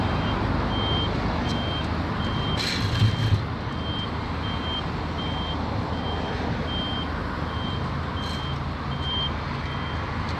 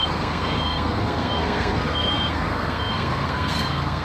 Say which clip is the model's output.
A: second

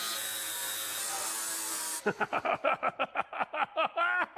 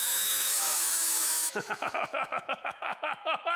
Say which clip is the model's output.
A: second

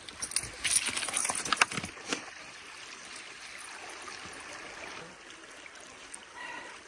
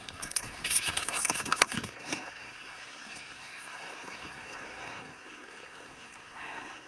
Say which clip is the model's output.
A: second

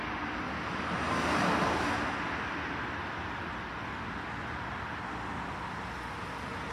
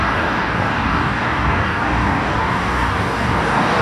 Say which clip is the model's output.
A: second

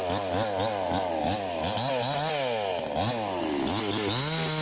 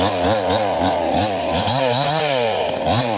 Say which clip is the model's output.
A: second